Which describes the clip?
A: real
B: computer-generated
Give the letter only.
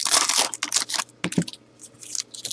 A